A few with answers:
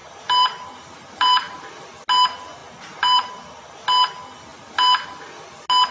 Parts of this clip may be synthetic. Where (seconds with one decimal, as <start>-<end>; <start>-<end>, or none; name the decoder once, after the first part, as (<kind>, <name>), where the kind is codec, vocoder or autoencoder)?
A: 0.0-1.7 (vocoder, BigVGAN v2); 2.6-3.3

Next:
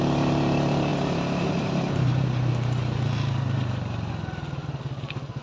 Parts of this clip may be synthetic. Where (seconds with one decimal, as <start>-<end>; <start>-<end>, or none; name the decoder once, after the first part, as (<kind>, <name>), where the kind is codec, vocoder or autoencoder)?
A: 0.9-4.1 (vocoder, BigVGAN v2)

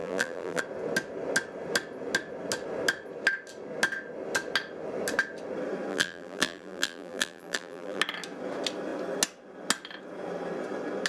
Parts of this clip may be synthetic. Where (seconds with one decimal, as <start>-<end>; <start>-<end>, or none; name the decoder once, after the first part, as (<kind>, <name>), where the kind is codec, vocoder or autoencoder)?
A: 0.0-0.6 (vocoder, BigVGAN v2); 5.9-8.0